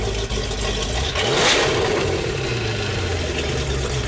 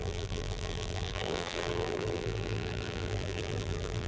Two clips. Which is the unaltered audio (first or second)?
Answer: first